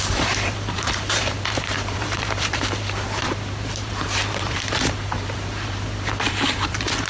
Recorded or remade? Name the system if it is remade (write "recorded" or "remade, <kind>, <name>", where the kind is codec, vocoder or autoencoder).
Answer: remade, vocoder, BigVGAN v2